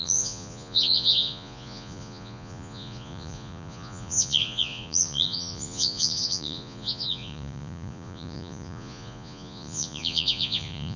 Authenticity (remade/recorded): remade